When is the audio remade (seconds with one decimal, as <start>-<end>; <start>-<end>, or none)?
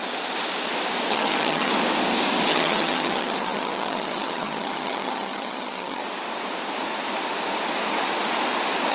1.1-1.7; 2.5-6.0